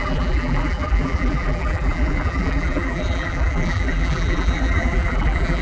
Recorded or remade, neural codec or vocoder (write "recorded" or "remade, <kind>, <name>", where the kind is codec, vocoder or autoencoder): remade, vocoder, BigVGAN v2